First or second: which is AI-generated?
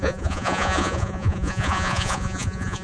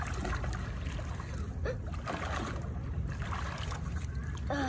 first